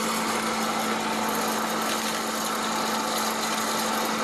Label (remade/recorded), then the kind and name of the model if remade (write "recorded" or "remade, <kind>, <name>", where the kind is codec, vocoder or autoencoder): recorded